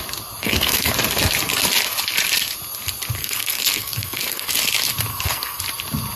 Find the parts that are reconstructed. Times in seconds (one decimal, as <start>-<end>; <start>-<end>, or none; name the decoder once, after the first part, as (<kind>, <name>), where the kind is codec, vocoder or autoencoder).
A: 0.4-0.9 (codec, SNAC); 3.2-4.5; 5.1-5.6